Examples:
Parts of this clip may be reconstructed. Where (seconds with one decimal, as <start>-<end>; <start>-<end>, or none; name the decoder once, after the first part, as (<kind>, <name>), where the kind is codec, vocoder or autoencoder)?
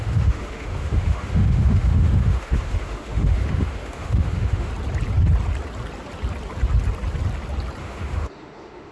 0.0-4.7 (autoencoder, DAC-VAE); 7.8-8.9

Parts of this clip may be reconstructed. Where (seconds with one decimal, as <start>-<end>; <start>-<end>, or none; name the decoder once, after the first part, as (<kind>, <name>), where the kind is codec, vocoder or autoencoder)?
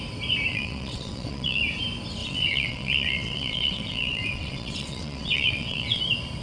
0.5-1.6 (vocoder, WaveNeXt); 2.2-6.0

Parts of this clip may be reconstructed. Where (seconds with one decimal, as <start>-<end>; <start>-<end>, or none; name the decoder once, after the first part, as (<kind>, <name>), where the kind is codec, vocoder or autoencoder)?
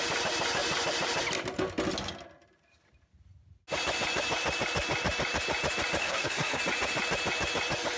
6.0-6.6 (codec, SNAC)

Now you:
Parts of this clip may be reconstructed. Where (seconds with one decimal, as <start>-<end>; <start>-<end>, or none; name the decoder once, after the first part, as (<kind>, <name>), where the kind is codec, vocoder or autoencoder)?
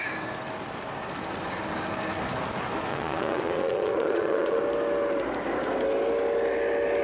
2.9-4.6 (vocoder, Vocos)